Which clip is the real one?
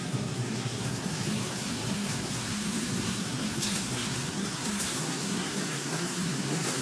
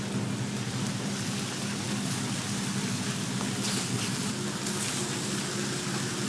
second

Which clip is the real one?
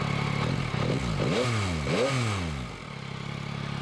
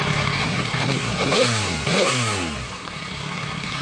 first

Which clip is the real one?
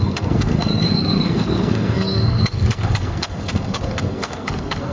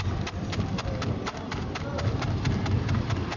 second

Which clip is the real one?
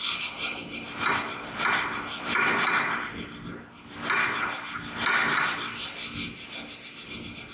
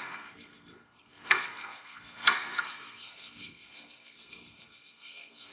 first